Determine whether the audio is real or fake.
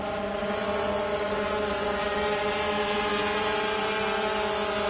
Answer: real